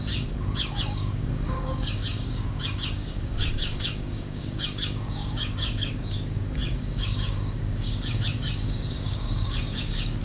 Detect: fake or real fake